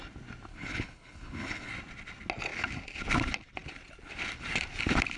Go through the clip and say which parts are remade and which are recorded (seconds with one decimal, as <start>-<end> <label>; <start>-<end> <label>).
0.0-0.5 recorded; 0.5-1.7 remade; 1.7-5.2 recorded